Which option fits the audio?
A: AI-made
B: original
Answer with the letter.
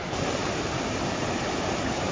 A